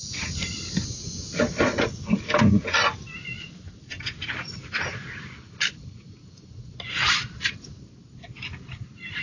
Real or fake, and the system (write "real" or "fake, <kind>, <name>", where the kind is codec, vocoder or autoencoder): real